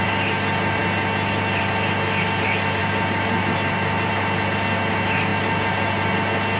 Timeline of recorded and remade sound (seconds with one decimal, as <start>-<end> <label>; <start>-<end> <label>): 0.0-2.8 recorded; 2.8-4.1 remade; 4.1-6.6 recorded